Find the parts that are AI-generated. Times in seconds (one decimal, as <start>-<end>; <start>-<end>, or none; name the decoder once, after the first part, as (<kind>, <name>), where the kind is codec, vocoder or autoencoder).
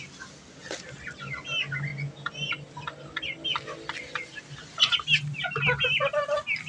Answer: none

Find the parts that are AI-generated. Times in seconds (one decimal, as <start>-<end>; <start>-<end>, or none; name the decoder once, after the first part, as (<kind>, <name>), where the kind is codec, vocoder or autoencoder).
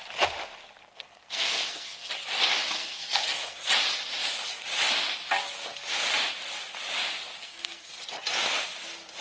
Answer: 0.9-2.1 (codec, SNAC); 2.8-3.7; 7.4-7.9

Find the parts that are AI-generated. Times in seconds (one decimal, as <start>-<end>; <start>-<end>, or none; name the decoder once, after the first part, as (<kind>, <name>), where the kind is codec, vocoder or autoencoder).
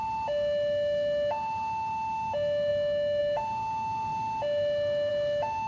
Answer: none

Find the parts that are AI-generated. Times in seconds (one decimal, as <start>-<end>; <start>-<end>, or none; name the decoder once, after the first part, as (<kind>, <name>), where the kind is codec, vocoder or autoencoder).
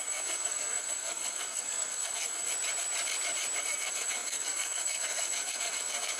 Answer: 0.0-2.5 (codec, SNAC); 3.6-6.2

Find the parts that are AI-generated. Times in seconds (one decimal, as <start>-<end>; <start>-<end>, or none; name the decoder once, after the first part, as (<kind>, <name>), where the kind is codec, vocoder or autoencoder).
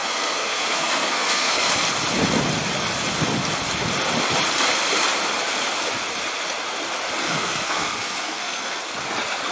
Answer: 0.0-1.7 (codec, SNAC); 7.2-8.8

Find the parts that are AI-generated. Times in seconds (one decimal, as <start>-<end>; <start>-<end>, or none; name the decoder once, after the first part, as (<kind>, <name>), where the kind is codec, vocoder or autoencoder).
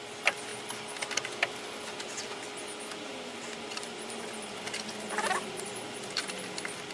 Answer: none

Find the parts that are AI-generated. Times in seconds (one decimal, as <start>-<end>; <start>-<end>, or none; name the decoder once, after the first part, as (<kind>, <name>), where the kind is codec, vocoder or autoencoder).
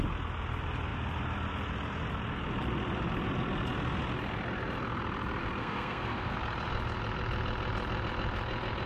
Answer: 5.6-6.4 (codec, SNAC)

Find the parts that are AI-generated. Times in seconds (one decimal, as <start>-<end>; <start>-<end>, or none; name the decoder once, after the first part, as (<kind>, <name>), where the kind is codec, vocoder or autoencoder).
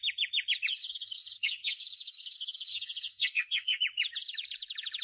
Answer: 0.8-3.8 (codec, SNAC)